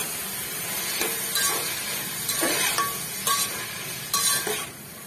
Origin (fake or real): real